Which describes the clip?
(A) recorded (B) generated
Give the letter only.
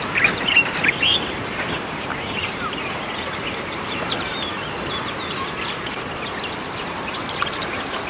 B